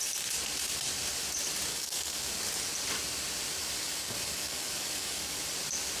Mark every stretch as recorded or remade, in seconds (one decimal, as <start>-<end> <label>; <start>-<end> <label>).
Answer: 0.0-1.7 recorded; 1.7-2.3 remade; 2.3-3.6 recorded; 3.6-5.4 remade; 5.4-6.0 recorded